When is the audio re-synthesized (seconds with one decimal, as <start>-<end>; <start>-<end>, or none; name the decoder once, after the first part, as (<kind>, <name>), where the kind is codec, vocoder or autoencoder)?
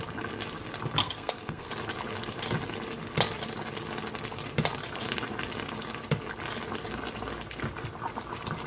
1.0-1.7 (codec, SNAC)